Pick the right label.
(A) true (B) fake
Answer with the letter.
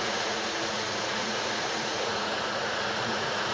B